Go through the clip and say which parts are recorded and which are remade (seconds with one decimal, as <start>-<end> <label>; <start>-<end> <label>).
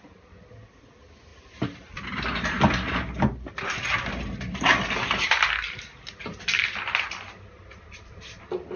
0.0-8.8 recorded